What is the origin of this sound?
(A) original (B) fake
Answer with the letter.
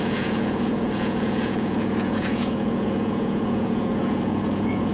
B